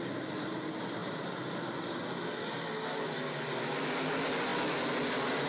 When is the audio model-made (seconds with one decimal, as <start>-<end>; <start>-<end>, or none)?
none